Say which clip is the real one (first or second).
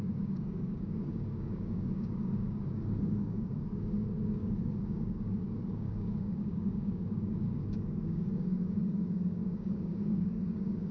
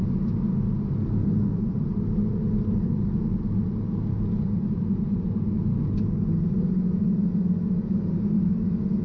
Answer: second